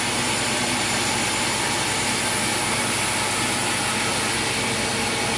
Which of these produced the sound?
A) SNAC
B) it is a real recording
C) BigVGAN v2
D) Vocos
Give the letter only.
B